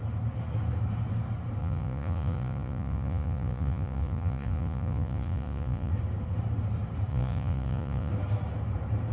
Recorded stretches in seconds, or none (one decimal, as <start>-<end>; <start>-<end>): 0.0-1.6; 5.9-7.1; 8.1-9.1